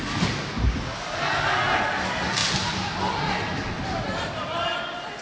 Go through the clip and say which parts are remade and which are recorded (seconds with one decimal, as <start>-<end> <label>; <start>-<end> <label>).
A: 0.0-5.2 recorded